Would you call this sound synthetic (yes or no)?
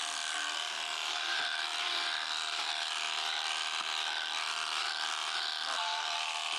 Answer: yes